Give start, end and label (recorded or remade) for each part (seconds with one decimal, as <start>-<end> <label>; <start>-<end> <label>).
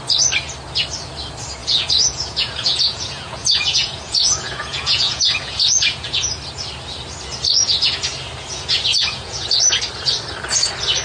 0.0-1.6 recorded; 1.6-6.4 remade; 6.4-8.9 recorded; 8.9-9.8 remade; 9.8-11.0 recorded